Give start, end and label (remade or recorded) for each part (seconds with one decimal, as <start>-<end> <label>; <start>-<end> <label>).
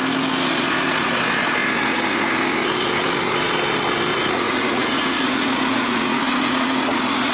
0.0-4.1 recorded; 4.1-7.3 remade